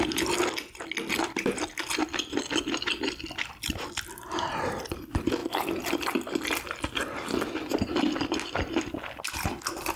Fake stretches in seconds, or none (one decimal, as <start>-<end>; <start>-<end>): none